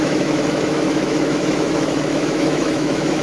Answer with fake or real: fake